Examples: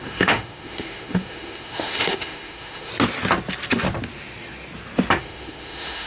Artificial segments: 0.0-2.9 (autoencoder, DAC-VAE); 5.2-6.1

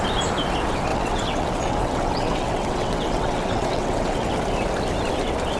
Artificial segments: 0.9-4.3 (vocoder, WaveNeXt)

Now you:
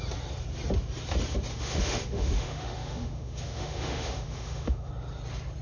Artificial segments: 1.5-4.9 (autoencoder, DAC-VAE)

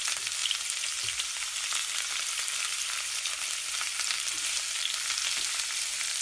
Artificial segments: none

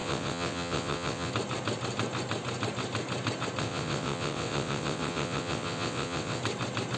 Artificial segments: 0.0-1.3 (vocoder, WaveNeXt); 3.6-6.4